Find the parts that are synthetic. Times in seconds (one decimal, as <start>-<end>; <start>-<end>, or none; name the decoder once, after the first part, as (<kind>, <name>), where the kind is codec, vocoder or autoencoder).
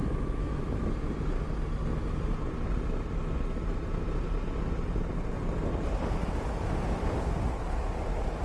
0.0-0.9 (autoencoder, DAC-VAE)